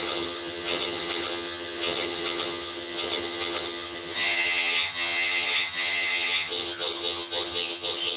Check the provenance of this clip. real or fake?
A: fake